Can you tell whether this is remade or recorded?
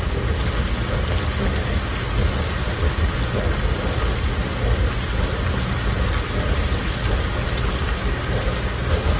recorded